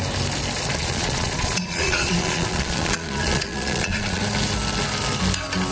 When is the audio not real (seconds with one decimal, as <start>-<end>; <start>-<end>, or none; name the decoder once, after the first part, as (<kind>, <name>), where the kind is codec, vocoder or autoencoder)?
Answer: 0.8-4.2 (vocoder, Vocos)